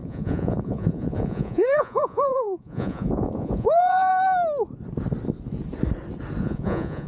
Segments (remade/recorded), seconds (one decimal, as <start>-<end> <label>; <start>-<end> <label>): 0.0-4.1 remade; 4.1-6.4 recorded; 6.4-7.1 remade